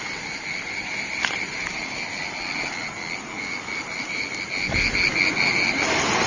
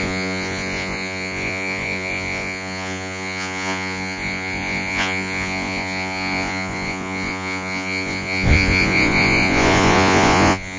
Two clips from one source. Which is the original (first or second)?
first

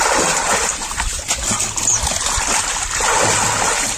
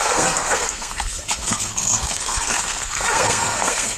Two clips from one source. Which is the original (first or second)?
first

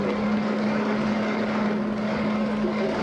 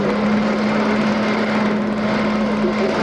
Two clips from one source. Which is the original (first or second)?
second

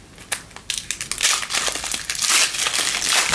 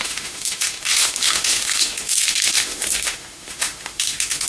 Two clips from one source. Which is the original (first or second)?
first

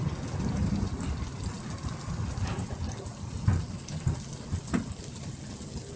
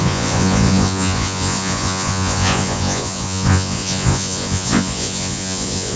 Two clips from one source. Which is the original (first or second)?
first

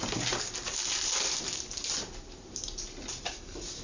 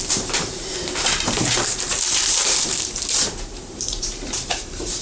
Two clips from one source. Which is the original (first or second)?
first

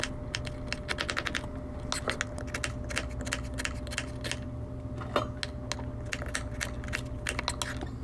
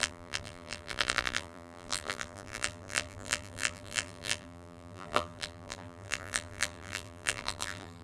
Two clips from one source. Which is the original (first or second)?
first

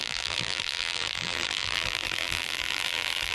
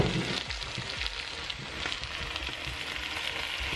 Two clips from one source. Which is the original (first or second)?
second